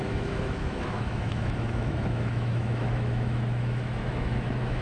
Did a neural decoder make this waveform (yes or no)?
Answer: yes